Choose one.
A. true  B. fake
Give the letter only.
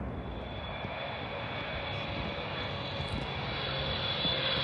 A